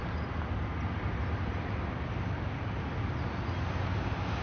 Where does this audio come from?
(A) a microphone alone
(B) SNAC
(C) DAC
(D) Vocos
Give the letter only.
A